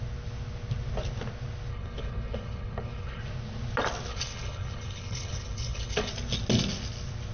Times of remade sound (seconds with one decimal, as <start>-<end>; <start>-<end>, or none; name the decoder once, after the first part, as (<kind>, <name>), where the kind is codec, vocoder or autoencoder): 1.7-3.2 (codec, HILCodec); 4.1-6.1